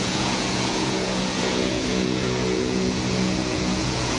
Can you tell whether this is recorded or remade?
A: remade